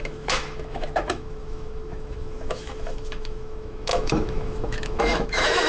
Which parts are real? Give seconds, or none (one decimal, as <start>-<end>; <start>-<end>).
none